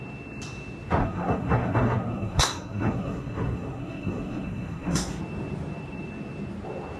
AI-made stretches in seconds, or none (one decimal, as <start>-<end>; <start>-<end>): 1.0-5.2